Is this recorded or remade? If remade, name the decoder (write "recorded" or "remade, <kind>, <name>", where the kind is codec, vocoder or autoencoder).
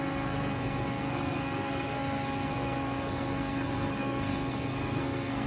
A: remade, codec, SNAC